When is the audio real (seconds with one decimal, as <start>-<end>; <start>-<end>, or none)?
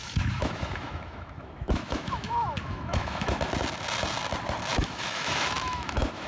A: 3.4-4.7